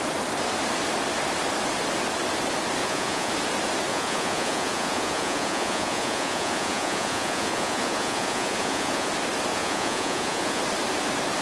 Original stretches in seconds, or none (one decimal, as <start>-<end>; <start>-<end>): 0.0-2.8; 3.3-3.9; 9.1-9.5; 10.6-11.4